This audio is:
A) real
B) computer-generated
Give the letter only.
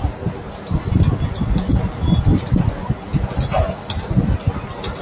A